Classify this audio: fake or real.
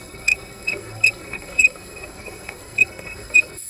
fake